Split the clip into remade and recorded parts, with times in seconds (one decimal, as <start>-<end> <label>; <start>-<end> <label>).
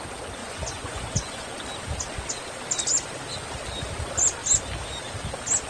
0.0-0.4 recorded; 0.4-1.5 remade; 1.5-5.7 recorded